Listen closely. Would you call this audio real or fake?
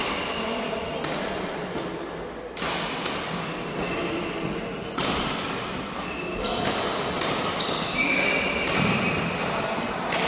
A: real